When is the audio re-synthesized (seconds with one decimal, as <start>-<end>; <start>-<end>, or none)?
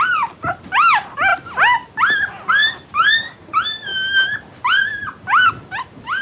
0.0-1.3; 2.5-3.9; 4.9-6.2